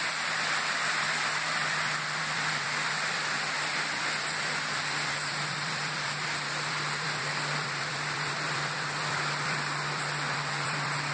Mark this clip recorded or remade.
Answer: remade